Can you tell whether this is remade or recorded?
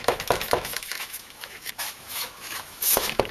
remade